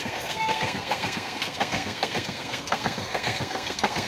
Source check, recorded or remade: remade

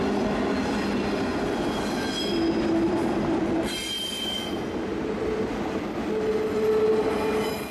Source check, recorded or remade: recorded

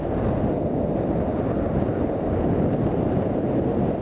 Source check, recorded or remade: recorded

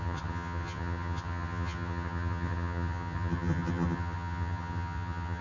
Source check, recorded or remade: remade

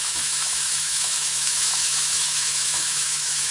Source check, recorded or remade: remade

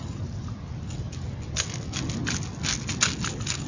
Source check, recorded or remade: recorded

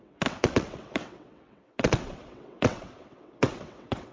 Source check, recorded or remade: remade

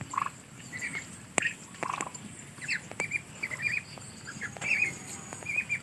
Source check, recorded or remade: recorded